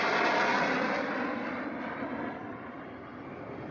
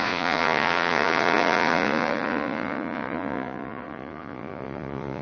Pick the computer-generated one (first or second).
second